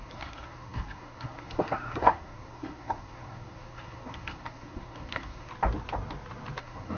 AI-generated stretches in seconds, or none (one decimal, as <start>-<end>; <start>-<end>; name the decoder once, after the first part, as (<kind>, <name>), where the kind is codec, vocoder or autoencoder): 0.0-5.5 (codec, SNAC); 6.6-7.0